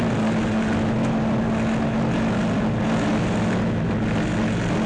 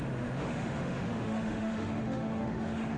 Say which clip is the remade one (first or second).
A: second